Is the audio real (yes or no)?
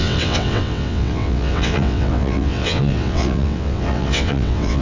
no